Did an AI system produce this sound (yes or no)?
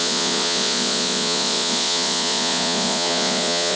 yes